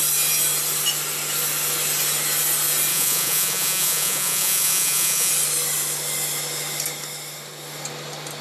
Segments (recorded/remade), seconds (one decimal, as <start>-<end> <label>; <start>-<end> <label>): 0.0-2.9 recorded; 2.9-5.3 remade; 5.3-8.4 recorded